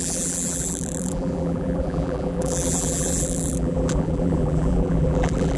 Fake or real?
fake